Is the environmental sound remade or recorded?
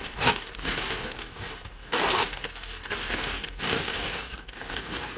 remade